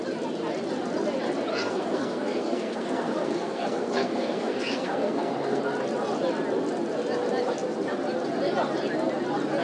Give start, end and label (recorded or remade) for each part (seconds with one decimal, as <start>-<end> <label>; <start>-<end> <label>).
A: 0.0-1.5 recorded; 1.5-5.6 remade; 5.6-9.6 recorded